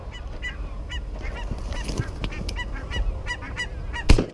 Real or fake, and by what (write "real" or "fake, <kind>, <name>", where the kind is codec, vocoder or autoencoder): real